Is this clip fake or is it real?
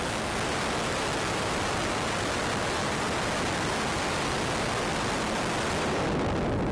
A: real